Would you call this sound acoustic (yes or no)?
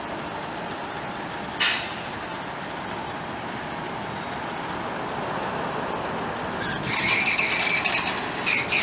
yes